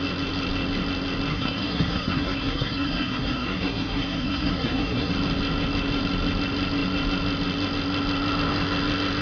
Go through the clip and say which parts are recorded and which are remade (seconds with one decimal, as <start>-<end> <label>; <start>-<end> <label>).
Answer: 0.0-1.3 recorded; 1.3-5.1 remade; 5.1-9.2 recorded